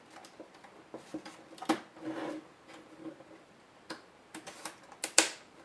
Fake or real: fake